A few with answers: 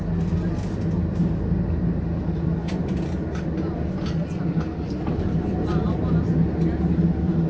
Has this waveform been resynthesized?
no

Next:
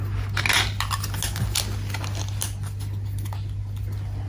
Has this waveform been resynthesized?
no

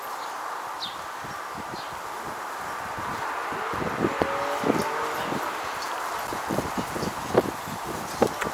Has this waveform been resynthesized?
yes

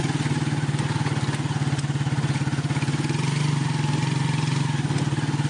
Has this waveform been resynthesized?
no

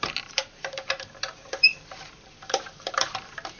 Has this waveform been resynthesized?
yes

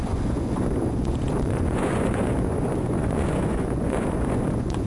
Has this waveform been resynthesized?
yes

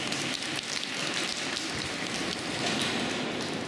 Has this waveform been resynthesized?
no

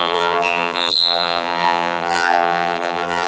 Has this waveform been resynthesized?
yes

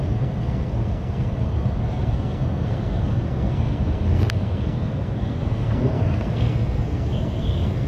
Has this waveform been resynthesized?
yes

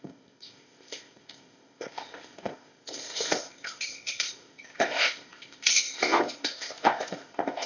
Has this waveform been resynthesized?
yes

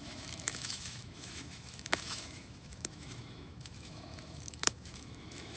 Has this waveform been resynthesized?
yes